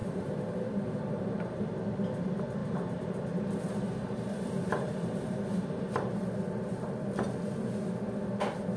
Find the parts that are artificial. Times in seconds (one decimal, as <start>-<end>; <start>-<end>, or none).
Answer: 0.0-1.7; 2.6-6.3